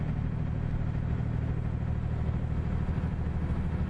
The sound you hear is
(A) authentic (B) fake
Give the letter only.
A